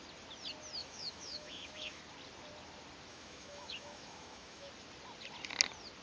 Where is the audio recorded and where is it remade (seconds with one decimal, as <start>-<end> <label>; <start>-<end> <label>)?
0.0-0.8 recorded; 0.8-2.0 remade; 2.0-3.1 recorded; 3.1-4.7 remade; 4.7-6.0 recorded

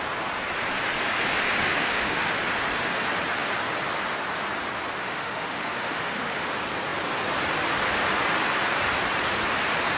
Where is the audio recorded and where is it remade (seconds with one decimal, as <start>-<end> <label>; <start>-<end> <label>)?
0.0-1.6 recorded; 1.6-2.4 remade; 2.4-5.0 recorded; 5.0-6.4 remade; 6.4-10.0 recorded

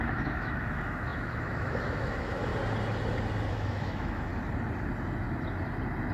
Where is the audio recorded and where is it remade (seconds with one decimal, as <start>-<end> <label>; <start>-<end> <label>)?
0.0-2.5 remade; 2.5-3.5 recorded; 3.5-4.3 remade; 4.3-6.1 recorded